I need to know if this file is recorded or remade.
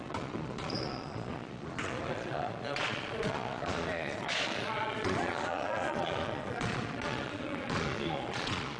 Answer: remade